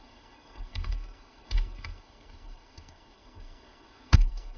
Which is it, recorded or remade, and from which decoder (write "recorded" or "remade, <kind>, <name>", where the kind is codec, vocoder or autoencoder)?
remade, codec, SNAC